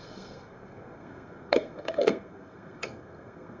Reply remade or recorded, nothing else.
remade